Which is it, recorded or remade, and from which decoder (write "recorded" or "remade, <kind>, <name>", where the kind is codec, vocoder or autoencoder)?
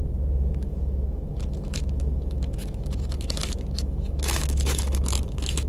remade, autoencoder, DAC-VAE